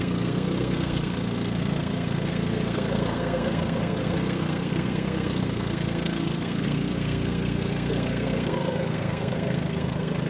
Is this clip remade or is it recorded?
remade